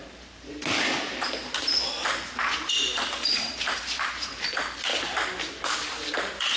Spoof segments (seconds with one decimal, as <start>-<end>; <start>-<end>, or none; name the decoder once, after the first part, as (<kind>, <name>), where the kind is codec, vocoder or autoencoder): 0.0-0.6 (vocoder, BigVGAN v2); 2.0-6.6